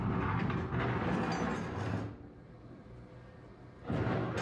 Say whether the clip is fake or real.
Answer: real